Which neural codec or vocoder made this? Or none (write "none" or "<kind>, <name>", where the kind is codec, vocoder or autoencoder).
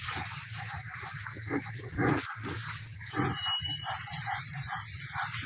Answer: none